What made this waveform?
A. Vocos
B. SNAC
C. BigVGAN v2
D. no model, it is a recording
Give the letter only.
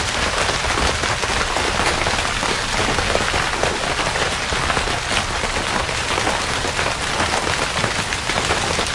D